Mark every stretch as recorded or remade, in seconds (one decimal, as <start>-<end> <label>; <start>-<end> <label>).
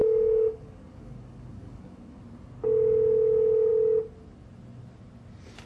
0.0-2.2 remade; 2.2-5.7 recorded